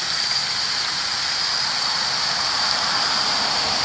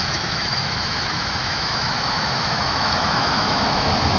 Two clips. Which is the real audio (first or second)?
first